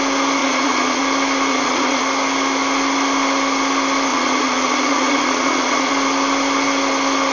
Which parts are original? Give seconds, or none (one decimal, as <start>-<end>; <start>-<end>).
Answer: 0.0-0.4; 1.0-1.5; 2.0-4.1; 5.9-7.3